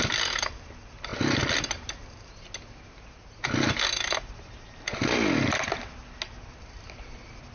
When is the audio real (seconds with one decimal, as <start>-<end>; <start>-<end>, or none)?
0.0-7.5

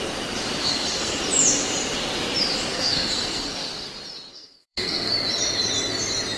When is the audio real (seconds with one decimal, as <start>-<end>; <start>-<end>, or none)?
0.0-0.6; 1.2-2.7; 3.7-4.3; 5.1-6.4

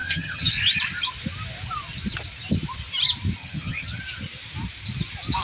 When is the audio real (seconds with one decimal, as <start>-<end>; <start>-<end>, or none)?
0.5-3.4; 4.0-5.4

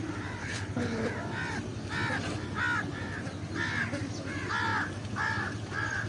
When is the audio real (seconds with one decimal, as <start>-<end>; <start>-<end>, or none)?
0.0-0.4; 1.1-6.1

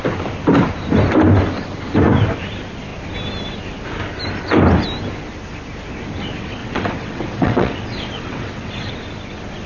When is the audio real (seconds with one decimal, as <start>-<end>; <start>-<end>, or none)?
0.0-6.6; 8.9-9.7